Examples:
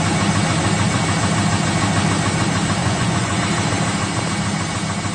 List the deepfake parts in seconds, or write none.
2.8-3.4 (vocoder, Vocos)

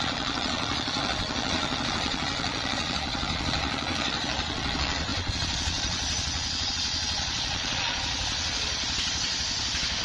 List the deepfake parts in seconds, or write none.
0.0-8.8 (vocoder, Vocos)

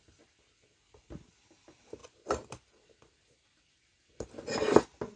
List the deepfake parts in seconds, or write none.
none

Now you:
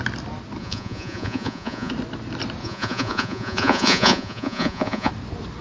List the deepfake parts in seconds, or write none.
0.6-1.9 (vocoder, Vocos); 2.6-5.1

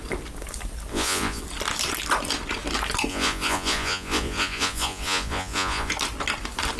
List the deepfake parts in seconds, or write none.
0.9-1.4 (vocoder, Vocos); 3.1-5.9